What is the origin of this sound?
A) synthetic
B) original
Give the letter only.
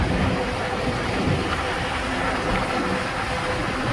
B